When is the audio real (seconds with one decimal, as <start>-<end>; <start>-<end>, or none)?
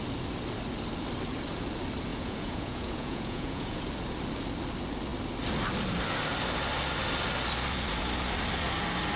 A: 0.0-2.1; 3.9-9.2